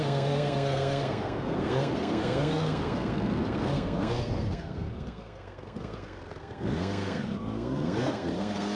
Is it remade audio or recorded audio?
remade